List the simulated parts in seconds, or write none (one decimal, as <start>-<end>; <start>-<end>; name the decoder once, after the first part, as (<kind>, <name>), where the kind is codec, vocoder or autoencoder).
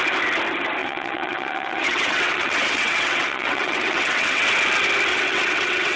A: 0.8-4.4 (vocoder, WaveNeXt); 5.1-6.0